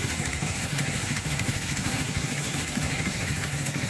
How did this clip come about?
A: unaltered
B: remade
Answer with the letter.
B